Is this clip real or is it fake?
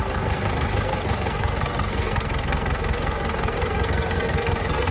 fake